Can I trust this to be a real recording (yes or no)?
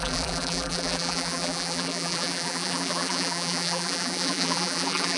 no